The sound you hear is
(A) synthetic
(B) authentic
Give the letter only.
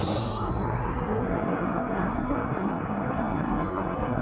A